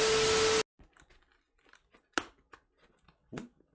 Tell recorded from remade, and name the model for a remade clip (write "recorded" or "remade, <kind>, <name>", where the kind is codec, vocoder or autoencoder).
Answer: recorded